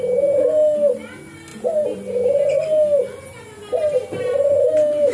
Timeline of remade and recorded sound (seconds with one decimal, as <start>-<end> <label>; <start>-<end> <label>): 0.0-5.1 recorded